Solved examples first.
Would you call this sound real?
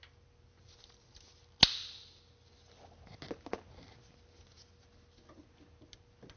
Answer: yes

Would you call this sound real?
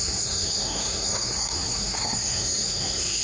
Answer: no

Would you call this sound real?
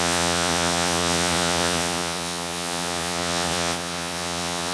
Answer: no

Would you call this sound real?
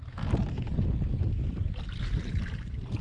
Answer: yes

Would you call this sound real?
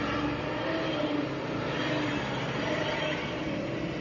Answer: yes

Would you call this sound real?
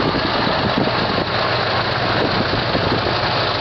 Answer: yes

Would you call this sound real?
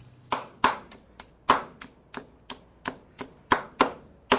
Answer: yes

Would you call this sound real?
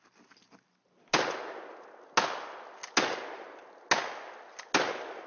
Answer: yes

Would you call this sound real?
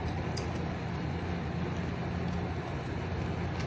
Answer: yes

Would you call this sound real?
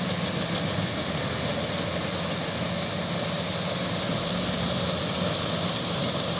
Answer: yes